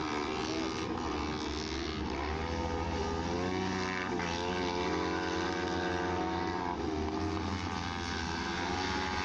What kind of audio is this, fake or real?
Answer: real